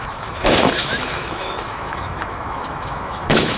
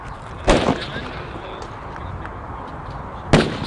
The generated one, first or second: first